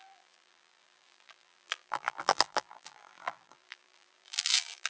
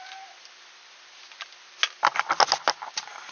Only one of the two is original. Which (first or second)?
second